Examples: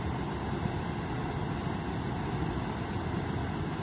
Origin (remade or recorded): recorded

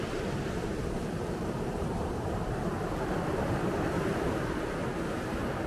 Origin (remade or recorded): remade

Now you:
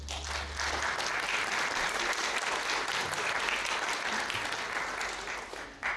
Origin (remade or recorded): recorded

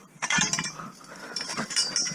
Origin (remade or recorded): recorded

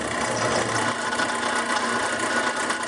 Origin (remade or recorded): recorded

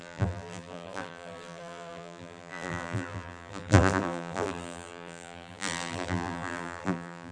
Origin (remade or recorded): remade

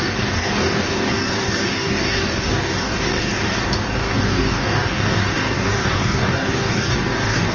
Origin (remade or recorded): remade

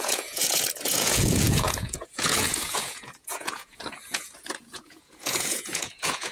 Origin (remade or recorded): remade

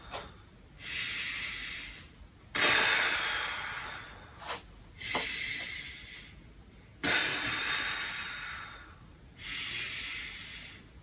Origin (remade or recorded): recorded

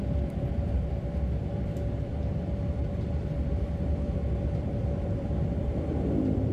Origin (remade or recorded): remade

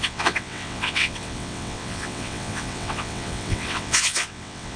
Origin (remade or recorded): remade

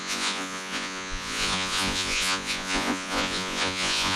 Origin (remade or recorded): remade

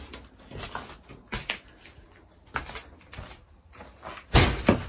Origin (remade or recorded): recorded